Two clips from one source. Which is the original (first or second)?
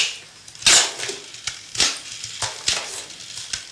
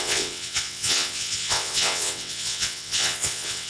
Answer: first